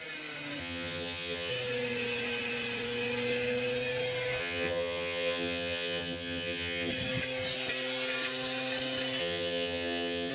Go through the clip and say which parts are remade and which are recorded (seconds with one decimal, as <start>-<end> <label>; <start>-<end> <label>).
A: 0.0-0.6 recorded; 0.6-1.5 remade; 1.5-4.4 recorded; 4.4-6.9 remade; 6.9-9.2 recorded; 9.2-10.3 remade